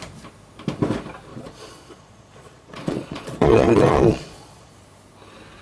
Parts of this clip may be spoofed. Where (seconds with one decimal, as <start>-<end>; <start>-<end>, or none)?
1.3-4.7